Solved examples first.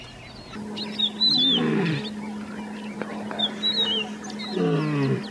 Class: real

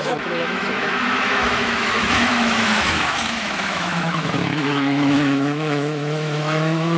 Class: fake